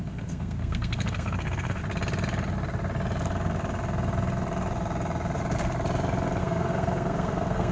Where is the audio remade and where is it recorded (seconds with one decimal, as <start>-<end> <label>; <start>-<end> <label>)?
0.0-1.8 remade; 1.8-6.4 recorded; 6.4-7.7 remade